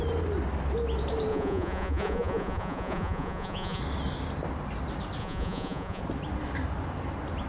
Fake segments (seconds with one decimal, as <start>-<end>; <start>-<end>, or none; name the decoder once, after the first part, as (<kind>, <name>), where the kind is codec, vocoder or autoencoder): 1.3-3.8 (vocoder, Vocos); 5.2-6.0